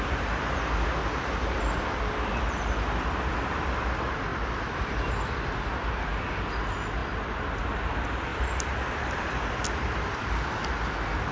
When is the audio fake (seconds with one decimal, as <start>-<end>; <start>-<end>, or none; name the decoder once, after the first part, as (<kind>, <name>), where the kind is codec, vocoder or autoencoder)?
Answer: 1.0-3.3 (vocoder, BigVGAN v2); 4.3-6.1; 8.3-10.4